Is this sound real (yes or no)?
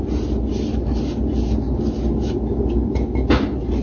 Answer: yes